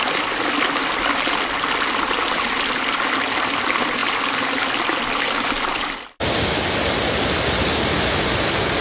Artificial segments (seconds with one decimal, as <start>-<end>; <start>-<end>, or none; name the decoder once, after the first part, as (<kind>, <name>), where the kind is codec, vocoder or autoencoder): none